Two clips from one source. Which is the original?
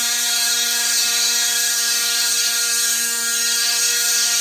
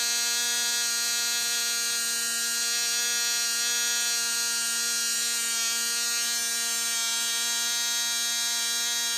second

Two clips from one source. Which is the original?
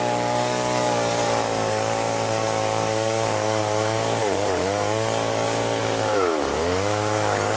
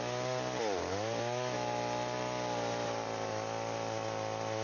second